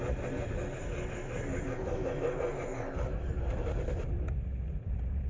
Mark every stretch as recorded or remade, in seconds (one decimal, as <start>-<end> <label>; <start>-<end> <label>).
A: 0.0-3.1 recorded; 3.1-3.9 remade; 3.9-5.3 recorded